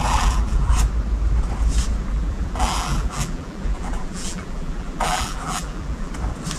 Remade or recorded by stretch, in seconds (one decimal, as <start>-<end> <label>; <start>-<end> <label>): 0.0-0.7 remade; 0.7-2.1 recorded; 2.1-6.1 remade; 6.1-6.6 recorded